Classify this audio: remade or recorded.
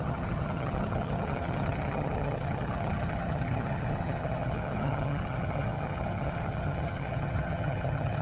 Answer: remade